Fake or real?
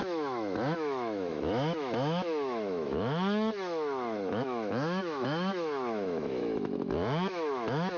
fake